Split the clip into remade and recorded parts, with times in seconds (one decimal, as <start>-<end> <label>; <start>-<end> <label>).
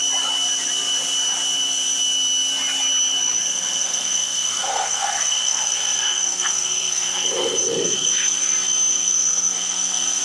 0.0-3.4 recorded; 3.4-8.5 remade; 8.5-8.9 recorded; 8.9-10.2 remade